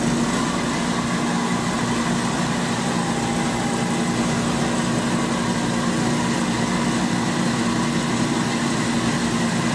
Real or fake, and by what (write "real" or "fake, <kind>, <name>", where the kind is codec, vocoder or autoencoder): real